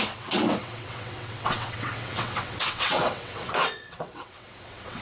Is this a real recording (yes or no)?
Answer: no